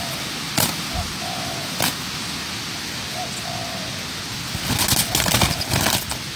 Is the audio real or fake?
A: real